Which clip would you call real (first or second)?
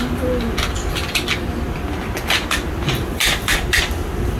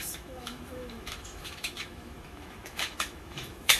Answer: first